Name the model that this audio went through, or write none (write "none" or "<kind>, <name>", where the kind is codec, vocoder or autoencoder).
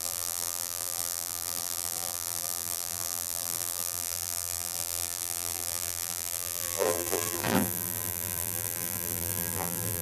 vocoder, BigVGAN v2